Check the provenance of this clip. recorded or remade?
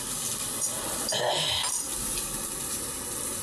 remade